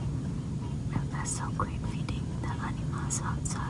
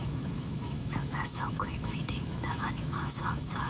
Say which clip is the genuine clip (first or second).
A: first